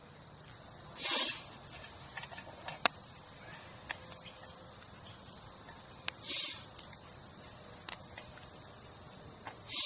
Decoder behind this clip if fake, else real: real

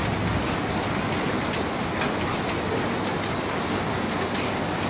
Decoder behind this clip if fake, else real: real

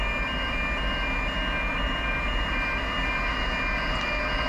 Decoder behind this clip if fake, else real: real